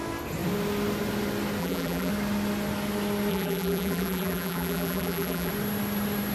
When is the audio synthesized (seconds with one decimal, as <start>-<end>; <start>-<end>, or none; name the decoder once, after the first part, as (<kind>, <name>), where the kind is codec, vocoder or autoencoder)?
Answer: 1.6-2.1 (vocoder, BigVGAN v2); 3.3-5.5